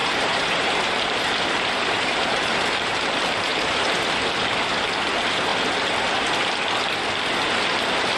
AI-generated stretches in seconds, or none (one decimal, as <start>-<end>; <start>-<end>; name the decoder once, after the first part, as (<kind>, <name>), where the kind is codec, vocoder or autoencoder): 0.0-2.9 (vocoder, BigVGAN v2); 3.5-4.1